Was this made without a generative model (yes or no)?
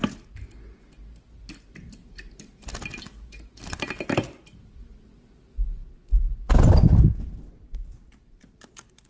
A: yes